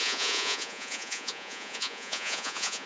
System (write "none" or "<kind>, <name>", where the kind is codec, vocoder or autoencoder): vocoder, Vocos